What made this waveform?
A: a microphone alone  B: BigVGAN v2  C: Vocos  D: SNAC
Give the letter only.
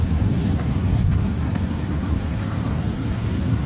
D